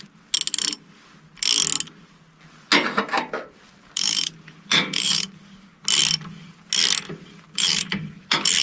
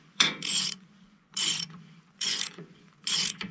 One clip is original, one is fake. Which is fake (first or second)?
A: second